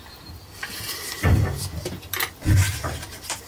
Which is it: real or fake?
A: fake